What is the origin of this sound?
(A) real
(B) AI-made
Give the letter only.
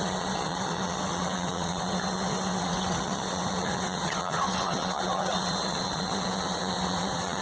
B